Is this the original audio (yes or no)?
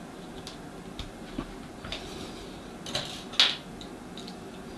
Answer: yes